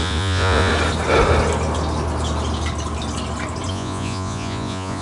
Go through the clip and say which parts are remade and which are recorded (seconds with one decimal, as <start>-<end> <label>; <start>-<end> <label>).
0.0-0.7 remade; 0.7-3.7 recorded; 3.7-5.0 remade

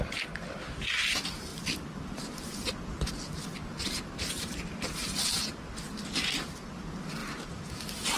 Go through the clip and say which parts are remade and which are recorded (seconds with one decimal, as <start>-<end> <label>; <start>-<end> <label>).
0.0-8.2 recorded

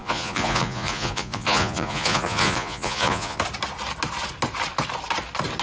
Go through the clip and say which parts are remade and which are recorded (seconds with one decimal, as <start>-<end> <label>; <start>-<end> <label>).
0.0-3.4 remade; 3.4-5.6 recorded

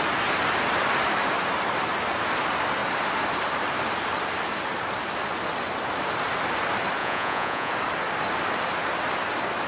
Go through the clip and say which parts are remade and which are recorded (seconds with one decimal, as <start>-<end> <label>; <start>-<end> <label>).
0.0-7.0 recorded; 7.0-7.7 remade; 7.7-9.7 recorded

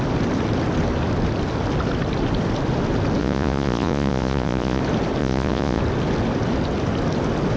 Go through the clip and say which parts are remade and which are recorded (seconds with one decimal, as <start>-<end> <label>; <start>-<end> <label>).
0.0-3.2 recorded; 3.2-4.8 remade; 4.8-5.2 recorded; 5.2-5.8 remade; 5.8-7.6 recorded

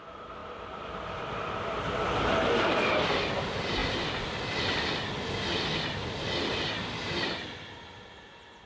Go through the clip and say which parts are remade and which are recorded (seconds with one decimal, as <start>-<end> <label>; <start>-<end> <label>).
0.0-8.7 recorded

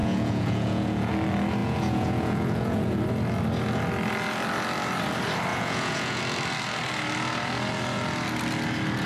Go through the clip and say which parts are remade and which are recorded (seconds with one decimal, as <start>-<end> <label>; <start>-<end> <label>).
0.0-1.1 remade; 1.1-1.6 recorded; 1.6-3.0 remade; 3.0-5.5 recorded; 5.5-6.2 remade; 6.2-9.1 recorded